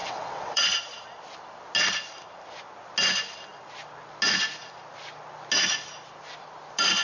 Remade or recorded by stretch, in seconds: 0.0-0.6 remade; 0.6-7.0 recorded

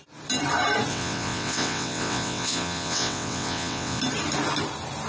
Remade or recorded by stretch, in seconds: 0.0-0.9 recorded; 0.9-4.0 remade; 4.0-5.1 recorded

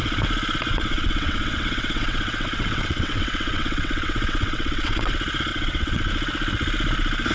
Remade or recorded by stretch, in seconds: 0.0-0.7 recorded; 0.7-5.1 remade; 5.1-5.5 recorded; 5.5-6.1 remade; 6.1-7.3 recorded

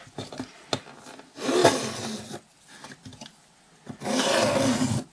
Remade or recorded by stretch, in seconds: 0.0-5.1 recorded

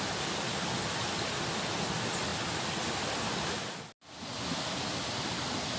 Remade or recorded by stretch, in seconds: 0.0-5.8 recorded

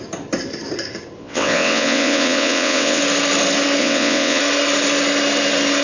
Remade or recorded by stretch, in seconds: 0.0-1.2 recorded; 1.2-3.0 remade; 3.0-3.8 recorded; 3.8-4.4 remade; 4.4-5.8 recorded